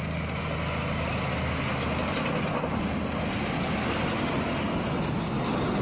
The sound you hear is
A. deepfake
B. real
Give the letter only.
B